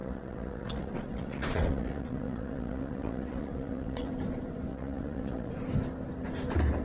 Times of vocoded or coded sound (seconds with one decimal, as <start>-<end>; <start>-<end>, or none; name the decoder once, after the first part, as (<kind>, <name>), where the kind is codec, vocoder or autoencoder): 0.0-4.1 (vocoder, WaveNeXt); 4.7-5.5